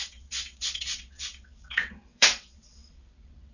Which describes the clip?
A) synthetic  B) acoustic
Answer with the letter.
A